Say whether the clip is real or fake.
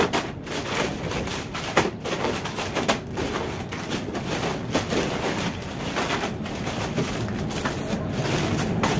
real